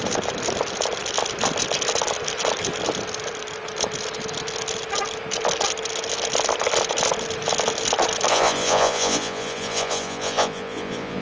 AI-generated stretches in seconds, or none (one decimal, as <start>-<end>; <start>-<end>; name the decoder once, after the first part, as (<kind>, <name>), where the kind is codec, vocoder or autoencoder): 8.3-11.2 (vocoder, Vocos)